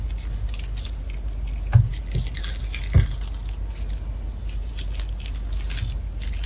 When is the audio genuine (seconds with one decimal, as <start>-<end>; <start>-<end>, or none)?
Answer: 0.0-6.5